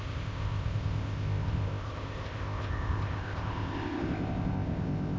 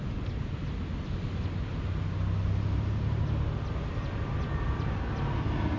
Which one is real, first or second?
second